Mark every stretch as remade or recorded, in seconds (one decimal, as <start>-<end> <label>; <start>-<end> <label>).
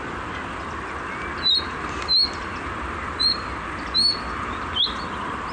0.0-5.5 recorded